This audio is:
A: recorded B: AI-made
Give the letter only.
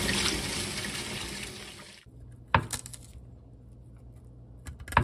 A